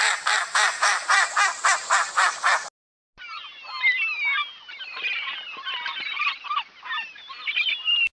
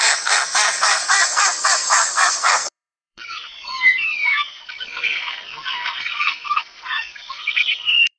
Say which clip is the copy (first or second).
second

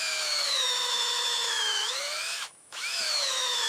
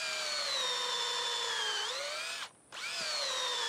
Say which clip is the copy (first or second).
first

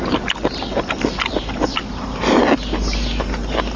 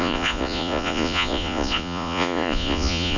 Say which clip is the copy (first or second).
second